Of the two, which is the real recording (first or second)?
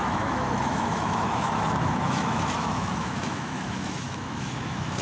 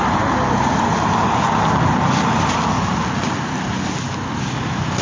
second